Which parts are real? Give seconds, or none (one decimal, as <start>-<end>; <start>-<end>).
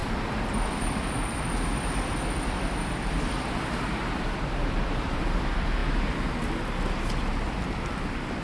5.8-7.7